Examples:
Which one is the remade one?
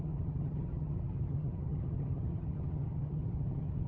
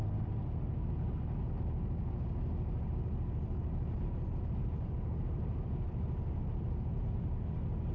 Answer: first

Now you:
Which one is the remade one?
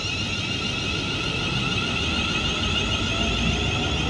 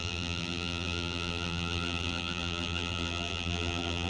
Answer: second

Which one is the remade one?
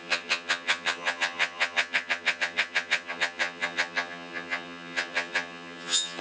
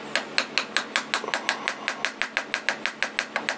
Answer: first